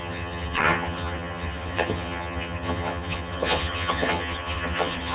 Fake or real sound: fake